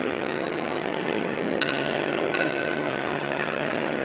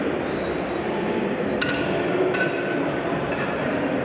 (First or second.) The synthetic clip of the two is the first